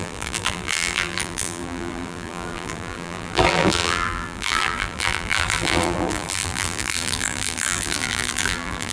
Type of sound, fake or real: fake